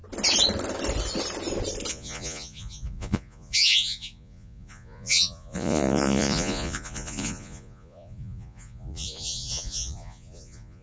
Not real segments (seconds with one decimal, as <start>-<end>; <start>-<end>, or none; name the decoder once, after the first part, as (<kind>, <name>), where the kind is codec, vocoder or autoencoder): 1.9-10.8 (vocoder, Vocos)

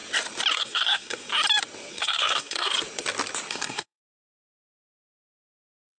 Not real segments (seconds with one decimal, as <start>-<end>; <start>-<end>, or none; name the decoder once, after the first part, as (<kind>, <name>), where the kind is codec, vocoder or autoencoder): 0.5-1.3 (codec, SNAC); 1.9-2.7; 3.5-6.0

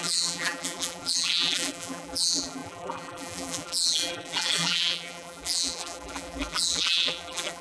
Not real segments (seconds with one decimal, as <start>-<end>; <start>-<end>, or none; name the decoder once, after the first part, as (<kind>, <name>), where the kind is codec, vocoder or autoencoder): 0.0-7.6 (vocoder, BigVGAN v2)